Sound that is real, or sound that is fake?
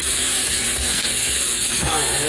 fake